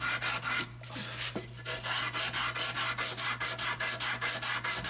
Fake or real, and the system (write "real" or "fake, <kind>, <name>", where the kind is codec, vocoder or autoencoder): real